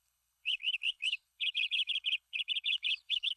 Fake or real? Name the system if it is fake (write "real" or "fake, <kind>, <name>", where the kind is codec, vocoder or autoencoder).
fake, codec, HILCodec